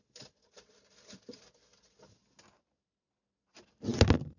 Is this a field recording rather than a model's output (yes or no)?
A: yes